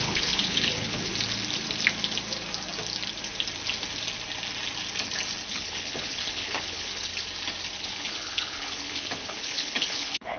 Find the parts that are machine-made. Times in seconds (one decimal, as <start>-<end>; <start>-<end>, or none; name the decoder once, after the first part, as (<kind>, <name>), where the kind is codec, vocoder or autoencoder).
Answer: 0.0-1.1 (codec, HILCodec); 5.5-7.1; 7.8-10.4